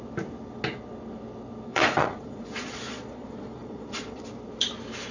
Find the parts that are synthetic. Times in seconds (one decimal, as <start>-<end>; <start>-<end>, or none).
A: 1.7-4.2